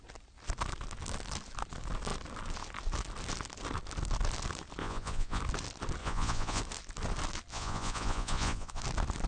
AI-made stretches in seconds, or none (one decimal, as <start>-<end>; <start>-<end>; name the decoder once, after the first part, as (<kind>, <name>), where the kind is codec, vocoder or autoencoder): 4.8-5.4 (vocoder, Vocos); 6.0-6.6; 7.5-8.8